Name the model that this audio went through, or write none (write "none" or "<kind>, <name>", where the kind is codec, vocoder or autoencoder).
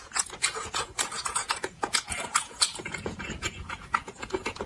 vocoder, Vocos